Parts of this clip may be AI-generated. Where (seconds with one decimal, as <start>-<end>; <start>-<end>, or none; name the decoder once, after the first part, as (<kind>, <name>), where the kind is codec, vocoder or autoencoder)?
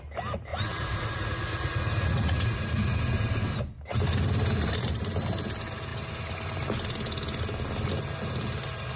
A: 0.5-3.0 (vocoder, Vocos)